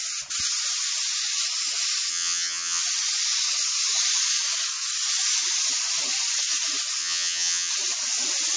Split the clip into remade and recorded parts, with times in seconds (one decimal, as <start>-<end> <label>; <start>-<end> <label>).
0.0-2.1 recorded; 2.1-2.8 remade; 2.8-7.0 recorded; 7.0-7.7 remade; 7.7-8.6 recorded